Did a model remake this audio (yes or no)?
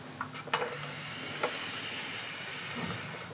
no